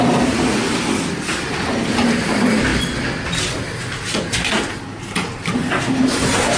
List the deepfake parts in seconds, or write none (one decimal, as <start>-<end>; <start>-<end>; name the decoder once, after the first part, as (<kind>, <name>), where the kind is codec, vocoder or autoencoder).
0.0-0.6 (vocoder, BigVGAN v2); 1.5-2.7; 4.7-6.6

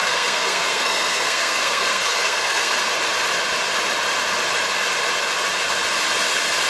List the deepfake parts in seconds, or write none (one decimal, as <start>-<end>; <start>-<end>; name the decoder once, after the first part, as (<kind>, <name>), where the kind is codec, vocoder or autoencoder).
0.0-2.7 (codec, SNAC)

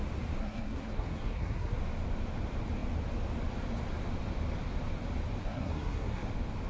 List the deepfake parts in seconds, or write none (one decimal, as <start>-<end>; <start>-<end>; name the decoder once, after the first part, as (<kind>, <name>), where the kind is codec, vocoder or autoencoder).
0.4-1.8 (codec, SNAC); 5.4-6.3